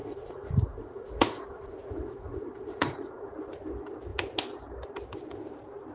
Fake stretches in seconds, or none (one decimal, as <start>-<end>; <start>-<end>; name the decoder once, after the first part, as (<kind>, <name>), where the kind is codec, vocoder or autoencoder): 0.0-3.3 (vocoder, Vocos)